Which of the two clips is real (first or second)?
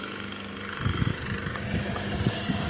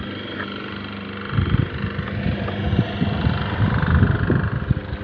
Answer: second